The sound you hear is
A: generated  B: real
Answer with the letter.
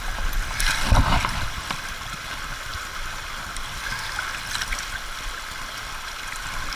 B